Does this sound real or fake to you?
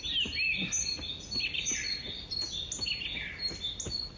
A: real